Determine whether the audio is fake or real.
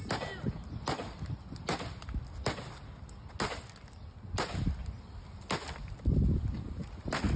real